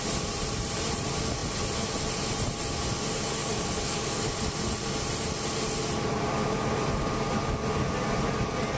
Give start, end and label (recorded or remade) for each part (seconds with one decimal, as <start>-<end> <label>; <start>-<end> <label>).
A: 0.0-3.4 recorded; 3.4-4.2 remade; 4.2-8.8 recorded